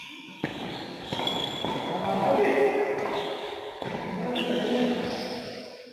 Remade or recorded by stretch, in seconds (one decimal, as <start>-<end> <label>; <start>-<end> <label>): 0.0-5.9 remade